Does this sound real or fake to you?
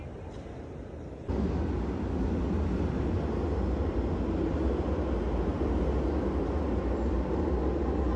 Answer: real